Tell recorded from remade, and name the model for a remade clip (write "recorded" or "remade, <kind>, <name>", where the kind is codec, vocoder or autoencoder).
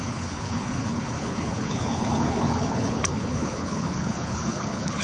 remade, codec, HILCodec